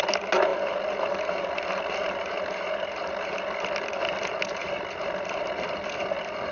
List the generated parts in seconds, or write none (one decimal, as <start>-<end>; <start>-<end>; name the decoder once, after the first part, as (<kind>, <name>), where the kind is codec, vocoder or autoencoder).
none